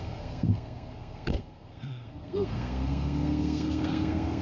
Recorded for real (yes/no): no